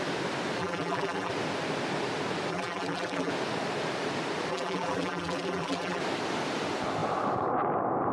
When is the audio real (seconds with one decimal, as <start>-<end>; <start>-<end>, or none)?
0.0-0.6; 1.3-2.5; 3.3-4.5; 6.0-8.1